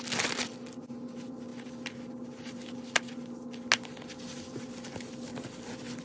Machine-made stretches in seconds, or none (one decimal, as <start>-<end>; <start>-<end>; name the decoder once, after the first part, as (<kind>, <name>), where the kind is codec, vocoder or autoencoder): none